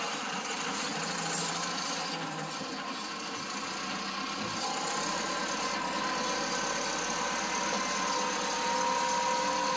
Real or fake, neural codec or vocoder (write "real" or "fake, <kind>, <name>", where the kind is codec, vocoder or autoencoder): real